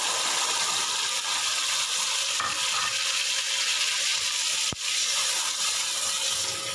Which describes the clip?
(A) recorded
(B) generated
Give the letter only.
A